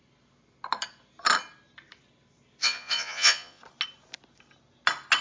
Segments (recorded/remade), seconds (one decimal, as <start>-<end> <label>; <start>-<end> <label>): 0.0-2.6 recorded; 2.6-3.6 remade; 3.6-5.2 recorded

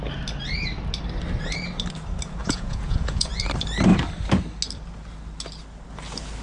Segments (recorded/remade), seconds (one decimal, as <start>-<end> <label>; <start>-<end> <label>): 0.0-2.4 recorded; 2.4-3.3 remade; 3.3-6.4 recorded

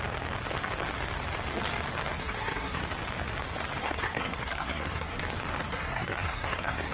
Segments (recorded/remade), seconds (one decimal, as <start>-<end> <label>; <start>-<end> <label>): 0.0-2.2 recorded; 2.2-2.8 remade; 2.8-3.8 recorded; 3.8-5.2 remade; 5.2-5.7 recorded; 5.7-6.9 remade